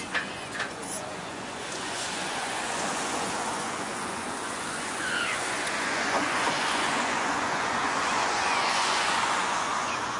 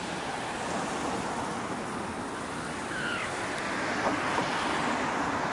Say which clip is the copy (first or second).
first